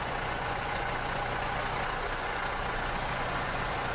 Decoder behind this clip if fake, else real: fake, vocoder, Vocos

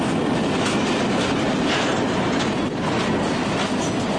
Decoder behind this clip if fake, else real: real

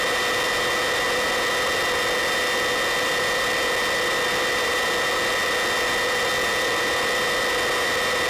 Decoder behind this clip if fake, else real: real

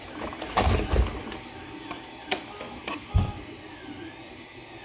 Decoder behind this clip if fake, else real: real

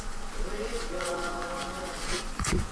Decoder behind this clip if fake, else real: fake, vocoder, Vocos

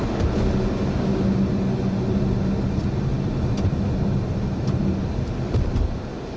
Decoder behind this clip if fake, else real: real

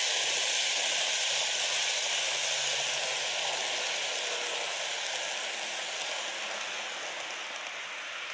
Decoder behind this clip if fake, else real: real